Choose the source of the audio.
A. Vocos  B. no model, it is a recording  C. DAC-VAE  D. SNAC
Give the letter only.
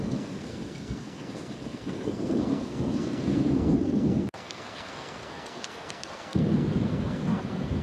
D